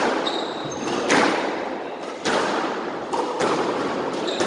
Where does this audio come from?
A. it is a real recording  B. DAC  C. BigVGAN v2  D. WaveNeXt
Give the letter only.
A